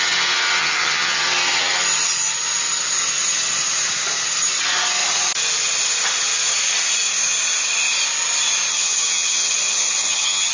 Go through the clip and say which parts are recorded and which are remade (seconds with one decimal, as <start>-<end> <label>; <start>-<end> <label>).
0.0-0.6 recorded; 0.6-1.2 remade; 1.2-8.7 recorded; 8.7-10.5 remade